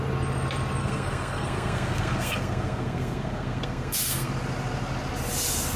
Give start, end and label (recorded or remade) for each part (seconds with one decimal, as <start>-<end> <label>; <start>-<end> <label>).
0.0-0.8 recorded; 0.8-4.3 remade; 4.3-5.8 recorded